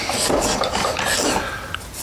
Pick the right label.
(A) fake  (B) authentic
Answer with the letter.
B